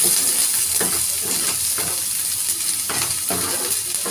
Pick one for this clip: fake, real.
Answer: real